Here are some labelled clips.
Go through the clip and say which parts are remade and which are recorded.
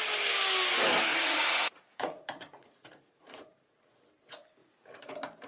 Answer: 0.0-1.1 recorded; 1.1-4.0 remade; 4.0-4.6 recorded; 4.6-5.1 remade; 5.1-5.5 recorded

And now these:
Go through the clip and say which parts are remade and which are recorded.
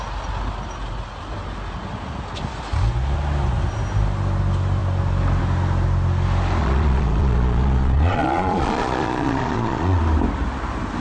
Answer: 0.0-6.6 recorded; 6.6-10.0 remade; 10.0-11.0 recorded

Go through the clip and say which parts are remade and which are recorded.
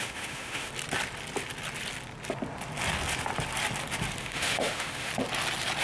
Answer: 0.0-0.7 remade; 0.7-4.2 recorded; 4.2-5.1 remade; 5.1-5.8 recorded